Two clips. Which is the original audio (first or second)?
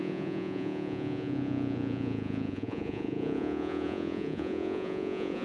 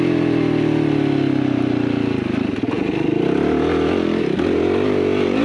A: second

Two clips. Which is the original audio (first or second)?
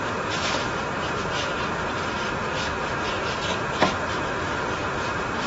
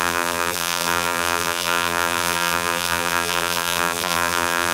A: first